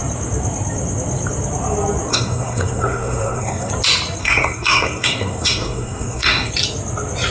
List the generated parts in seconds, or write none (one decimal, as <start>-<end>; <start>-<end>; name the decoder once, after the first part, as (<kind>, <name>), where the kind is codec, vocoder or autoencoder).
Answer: 2.1-3.7 (codec, SNAC); 4.2-6.5